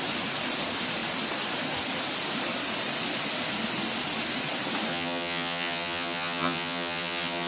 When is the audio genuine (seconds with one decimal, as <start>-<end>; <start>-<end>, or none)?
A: 0.0-4.9